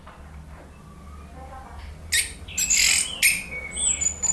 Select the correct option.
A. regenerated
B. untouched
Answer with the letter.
B